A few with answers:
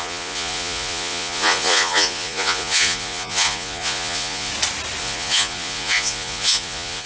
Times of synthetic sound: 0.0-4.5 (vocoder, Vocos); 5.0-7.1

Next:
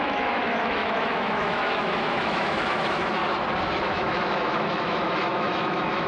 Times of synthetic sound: 0.0-3.2 (autoencoder, DAC-VAE); 3.8-6.1